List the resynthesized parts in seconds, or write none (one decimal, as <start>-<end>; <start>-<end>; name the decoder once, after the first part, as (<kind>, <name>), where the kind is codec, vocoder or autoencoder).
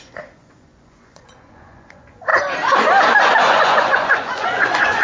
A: 0.0-2.3 (vocoder, Vocos); 3.4-5.0